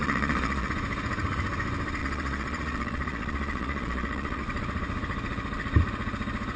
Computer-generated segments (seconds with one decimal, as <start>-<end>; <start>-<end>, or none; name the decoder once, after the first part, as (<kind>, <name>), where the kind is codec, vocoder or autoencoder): 0.0-0.7 (vocoder, Vocos); 2.0-4.4